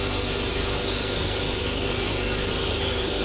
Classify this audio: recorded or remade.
remade